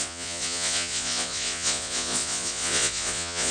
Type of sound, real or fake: fake